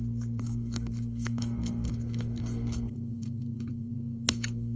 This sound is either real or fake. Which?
fake